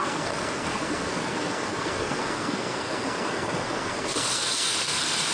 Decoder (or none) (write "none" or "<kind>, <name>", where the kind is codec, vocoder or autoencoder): codec, SNAC